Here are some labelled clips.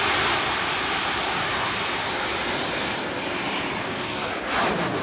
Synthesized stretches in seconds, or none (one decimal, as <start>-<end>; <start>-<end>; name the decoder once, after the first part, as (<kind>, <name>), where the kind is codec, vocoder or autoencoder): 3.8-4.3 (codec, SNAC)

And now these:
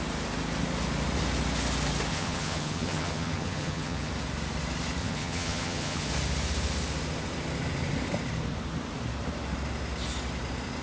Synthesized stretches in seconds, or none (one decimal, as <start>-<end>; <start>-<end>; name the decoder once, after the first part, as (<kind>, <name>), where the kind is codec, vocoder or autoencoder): 2.1-4.1 (vocoder, HiFi-GAN); 5.0-6.1

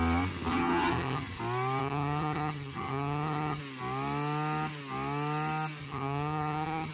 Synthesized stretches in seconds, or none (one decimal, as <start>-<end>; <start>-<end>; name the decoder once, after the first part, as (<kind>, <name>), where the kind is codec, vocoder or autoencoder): 0.5-1.4 (vocoder, HiFi-GAN); 1.8-3.6; 5.8-6.9